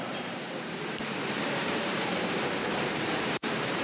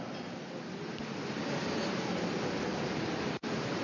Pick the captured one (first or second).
second